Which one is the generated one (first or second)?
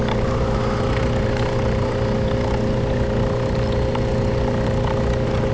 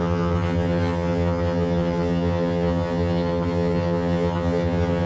second